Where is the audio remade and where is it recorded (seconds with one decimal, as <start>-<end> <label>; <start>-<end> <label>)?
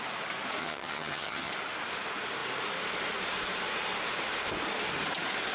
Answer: 0.0-0.6 recorded; 0.6-1.5 remade; 1.5-5.5 recorded